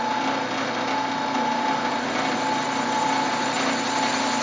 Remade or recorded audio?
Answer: recorded